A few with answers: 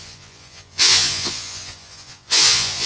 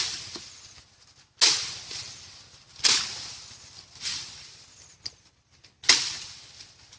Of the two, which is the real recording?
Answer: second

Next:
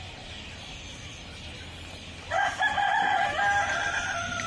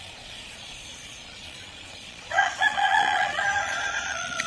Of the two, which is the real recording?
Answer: first